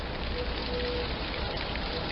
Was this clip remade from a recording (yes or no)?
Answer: no